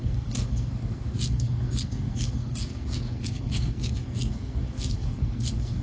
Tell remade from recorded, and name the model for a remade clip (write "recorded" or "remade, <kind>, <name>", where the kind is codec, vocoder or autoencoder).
remade, codec, SNAC